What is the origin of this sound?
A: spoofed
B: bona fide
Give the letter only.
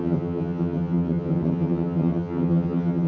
A